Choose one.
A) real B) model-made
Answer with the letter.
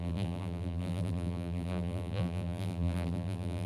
B